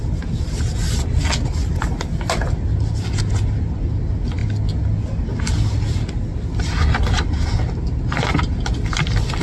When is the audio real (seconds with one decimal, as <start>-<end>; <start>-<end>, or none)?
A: 0.0-9.4